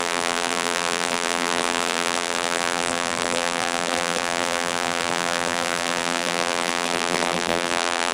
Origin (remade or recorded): remade